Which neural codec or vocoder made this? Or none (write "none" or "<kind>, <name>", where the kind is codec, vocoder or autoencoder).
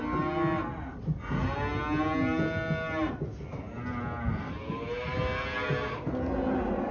none